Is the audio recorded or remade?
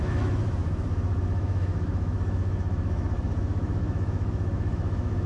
remade